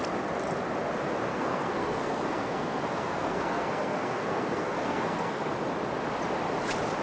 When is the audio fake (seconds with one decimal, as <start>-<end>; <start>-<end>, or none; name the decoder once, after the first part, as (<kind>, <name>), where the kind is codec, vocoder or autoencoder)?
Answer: 1.3-5.5 (codec, SNAC)